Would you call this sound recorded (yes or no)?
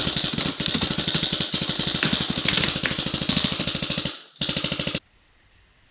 yes